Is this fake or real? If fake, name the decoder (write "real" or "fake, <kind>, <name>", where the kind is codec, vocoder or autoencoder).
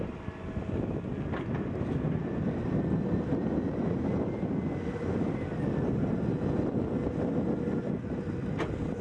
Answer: real